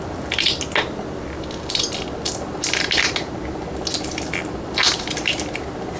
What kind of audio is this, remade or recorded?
recorded